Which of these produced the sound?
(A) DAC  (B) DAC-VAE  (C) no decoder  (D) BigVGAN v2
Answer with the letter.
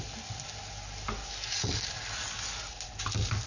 C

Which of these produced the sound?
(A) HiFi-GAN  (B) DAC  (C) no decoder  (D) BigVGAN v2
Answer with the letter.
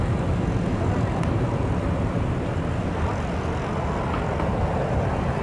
C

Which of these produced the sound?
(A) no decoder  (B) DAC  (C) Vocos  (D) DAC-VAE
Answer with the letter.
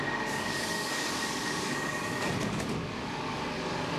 B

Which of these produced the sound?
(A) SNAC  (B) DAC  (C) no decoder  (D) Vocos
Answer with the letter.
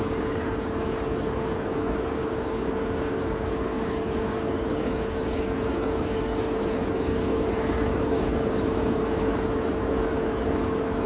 B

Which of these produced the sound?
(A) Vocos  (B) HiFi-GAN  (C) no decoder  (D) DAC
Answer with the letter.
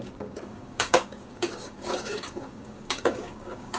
D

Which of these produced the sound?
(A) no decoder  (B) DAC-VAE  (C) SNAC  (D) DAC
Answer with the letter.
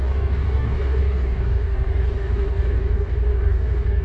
D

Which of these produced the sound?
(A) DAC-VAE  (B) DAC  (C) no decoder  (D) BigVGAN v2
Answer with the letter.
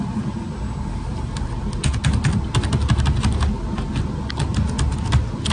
C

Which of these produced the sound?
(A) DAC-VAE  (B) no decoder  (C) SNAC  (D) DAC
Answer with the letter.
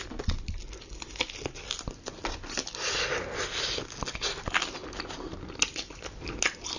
B